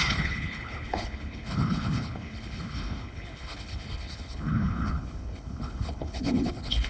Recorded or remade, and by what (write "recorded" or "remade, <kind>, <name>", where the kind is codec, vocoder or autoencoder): remade, codec, HILCodec